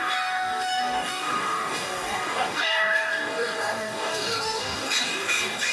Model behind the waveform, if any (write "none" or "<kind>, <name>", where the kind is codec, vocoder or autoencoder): codec, DAC